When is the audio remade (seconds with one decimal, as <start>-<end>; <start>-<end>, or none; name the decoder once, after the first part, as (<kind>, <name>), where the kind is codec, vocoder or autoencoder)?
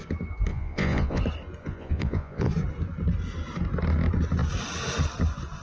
0.5-1.2 (vocoder, Vocos); 1.6-2.5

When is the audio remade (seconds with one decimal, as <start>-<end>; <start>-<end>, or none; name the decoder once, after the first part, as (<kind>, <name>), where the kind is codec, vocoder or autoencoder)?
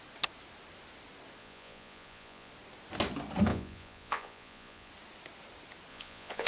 1.4-2.5 (vocoder, Vocos); 3.5-4.9; 5.9-6.5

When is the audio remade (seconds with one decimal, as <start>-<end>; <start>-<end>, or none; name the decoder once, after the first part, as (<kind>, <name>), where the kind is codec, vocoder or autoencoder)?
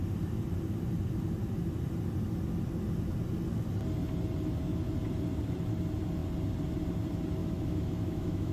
7.4-8.5 (autoencoder, DAC-VAE)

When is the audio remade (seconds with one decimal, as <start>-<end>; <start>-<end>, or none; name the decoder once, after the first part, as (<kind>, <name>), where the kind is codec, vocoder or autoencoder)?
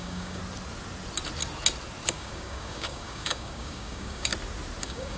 0.0-0.4 (codec, DAC); 2.1-4.3; 4.8-5.2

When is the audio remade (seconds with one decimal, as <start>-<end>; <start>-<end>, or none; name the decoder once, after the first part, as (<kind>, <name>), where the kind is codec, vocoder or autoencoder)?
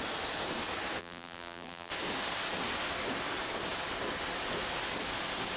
1.0-1.9 (vocoder, BigVGAN v2)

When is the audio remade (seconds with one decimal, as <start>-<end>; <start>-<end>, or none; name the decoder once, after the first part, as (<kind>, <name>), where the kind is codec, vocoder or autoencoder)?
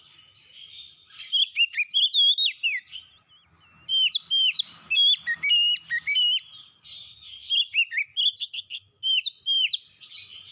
none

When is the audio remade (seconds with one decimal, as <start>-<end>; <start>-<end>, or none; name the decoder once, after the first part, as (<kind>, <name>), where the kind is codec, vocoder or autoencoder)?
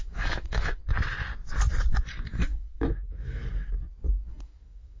0.0-0.8 (autoencoder, DAC-VAE); 2.2-3.4; 4.3-5.0